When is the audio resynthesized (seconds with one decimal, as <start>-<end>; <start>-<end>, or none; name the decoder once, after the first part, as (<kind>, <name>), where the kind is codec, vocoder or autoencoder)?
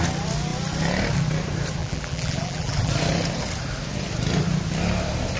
1.8-2.9 (vocoder, BigVGAN v2)